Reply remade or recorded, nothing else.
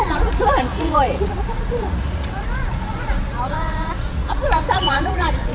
remade